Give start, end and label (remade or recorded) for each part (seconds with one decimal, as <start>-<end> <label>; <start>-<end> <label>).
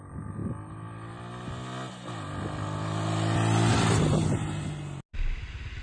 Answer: 0.0-5.8 recorded